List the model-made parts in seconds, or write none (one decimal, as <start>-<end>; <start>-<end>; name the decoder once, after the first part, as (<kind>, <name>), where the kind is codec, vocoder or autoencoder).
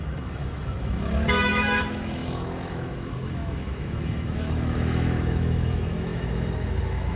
0.0-7.2 (autoencoder, DAC-VAE)